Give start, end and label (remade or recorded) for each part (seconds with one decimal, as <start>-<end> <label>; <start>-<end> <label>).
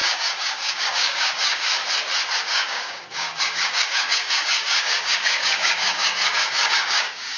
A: 0.0-1.8 remade; 1.8-2.4 recorded; 2.4-7.4 remade